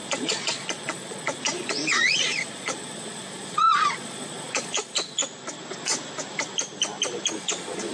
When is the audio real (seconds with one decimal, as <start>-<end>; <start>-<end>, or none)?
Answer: 5.2-7.3